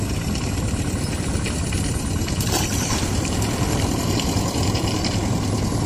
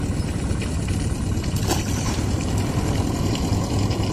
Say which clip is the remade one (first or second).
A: first